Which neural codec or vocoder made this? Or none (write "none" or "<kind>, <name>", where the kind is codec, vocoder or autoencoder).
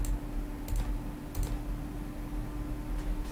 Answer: none